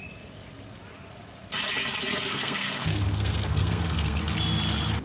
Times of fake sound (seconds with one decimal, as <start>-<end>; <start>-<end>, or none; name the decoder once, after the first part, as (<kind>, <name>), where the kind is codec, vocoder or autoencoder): 2.3-4.2 (codec, SNAC)